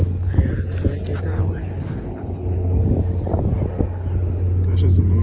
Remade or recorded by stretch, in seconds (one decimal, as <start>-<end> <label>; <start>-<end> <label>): 0.0-1.3 recorded; 1.3-2.8 remade; 2.8-5.2 recorded